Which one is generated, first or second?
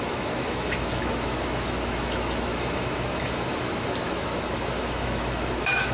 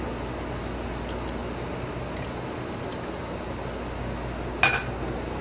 first